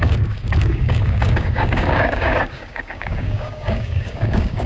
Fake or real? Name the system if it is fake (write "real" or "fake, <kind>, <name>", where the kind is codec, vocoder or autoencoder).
fake, codec, DAC